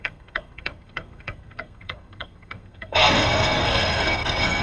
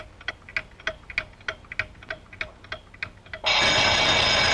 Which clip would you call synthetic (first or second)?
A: first